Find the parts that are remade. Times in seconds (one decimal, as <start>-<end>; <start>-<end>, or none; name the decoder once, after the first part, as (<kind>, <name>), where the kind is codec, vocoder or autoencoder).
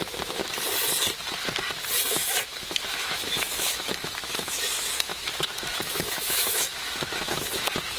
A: 0.0-0.4 (autoencoder, DAC-VAE); 2.1-8.0